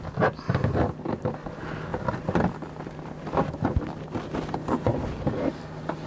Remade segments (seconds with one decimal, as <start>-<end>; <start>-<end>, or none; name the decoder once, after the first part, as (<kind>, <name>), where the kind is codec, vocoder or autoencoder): none